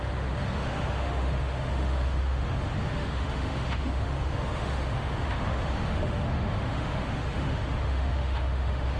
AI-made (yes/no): yes